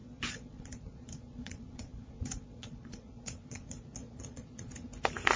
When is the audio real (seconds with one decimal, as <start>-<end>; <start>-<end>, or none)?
4.7-5.4